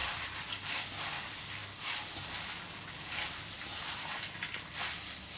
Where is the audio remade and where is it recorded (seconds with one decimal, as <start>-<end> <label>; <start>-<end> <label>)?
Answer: 0.0-0.5 remade; 0.5-5.4 recorded